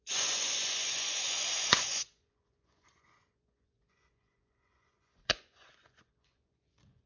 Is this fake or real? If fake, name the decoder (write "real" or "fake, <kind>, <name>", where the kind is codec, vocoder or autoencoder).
fake, vocoder, Vocos